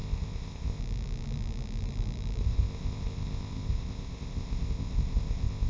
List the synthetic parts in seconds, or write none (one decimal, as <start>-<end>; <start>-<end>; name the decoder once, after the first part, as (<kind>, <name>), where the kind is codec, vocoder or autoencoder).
0.0-0.8 (codec, ZipCodec); 2.4-5.7